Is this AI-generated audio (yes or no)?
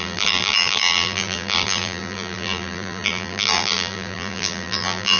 yes